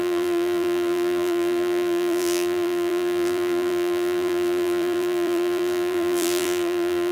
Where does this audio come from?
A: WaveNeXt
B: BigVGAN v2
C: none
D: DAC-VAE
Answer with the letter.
B